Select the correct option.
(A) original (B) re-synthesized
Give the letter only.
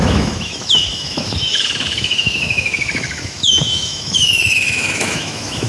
B